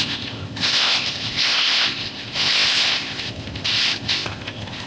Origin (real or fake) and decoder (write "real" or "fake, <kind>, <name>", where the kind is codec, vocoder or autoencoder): fake, codec, ZipCodec